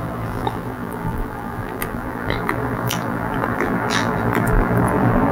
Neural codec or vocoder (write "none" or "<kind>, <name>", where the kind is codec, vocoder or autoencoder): vocoder, BigVGAN v2